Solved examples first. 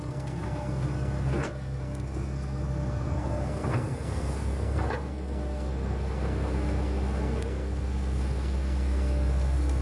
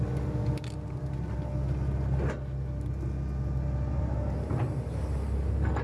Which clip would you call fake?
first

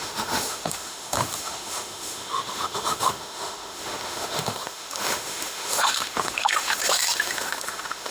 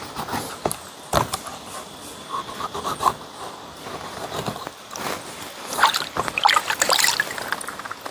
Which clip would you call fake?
first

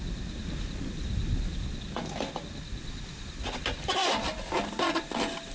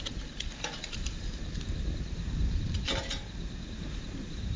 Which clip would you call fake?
second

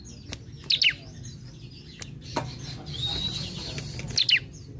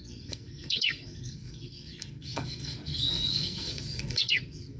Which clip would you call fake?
second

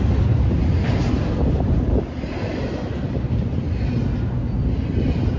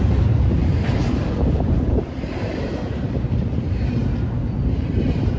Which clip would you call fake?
second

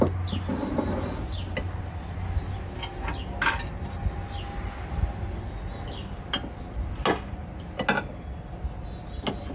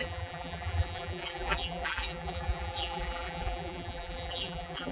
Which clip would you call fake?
second